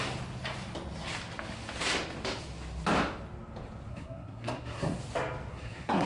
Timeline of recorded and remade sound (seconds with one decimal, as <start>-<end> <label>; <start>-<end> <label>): 0.0-3.9 recorded; 3.9-5.0 remade; 5.0-5.5 recorded; 5.5-6.1 remade